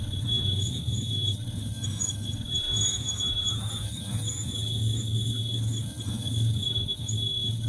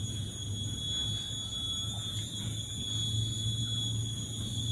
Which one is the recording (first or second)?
second